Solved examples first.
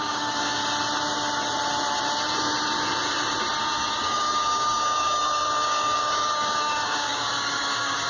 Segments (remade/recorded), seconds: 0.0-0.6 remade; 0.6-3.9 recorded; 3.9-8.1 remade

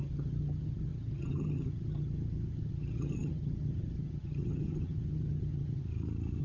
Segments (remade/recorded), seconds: 0.0-5.8 remade; 5.8-6.4 recorded

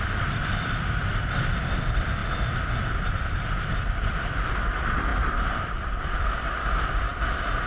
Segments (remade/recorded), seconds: 0.0-2.2 remade; 2.2-4.5 recorded; 4.5-7.7 remade

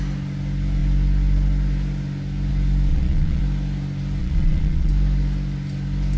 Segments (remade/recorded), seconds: 0.0-2.9 recorded; 2.9-3.4 remade; 3.4-4.2 recorded; 4.2-4.9 remade; 4.9-6.2 recorded

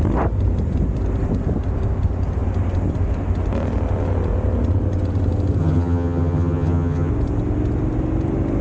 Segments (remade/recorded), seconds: 0.0-5.6 recorded; 5.6-7.1 remade; 7.1-8.6 recorded

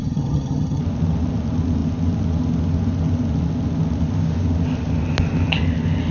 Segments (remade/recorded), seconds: 0.0-0.8 remade; 0.8-6.1 recorded

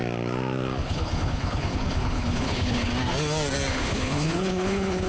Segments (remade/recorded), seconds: 0.0-0.8 recorded; 0.8-2.9 remade; 2.9-3.7 recorded; 3.7-5.1 remade